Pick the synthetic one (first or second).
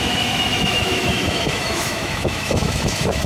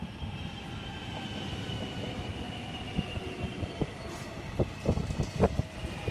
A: first